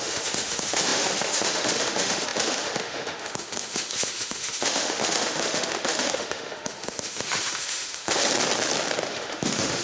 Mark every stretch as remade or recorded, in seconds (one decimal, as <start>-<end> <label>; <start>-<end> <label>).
0.0-8.2 remade; 8.2-9.1 recorded; 9.1-9.8 remade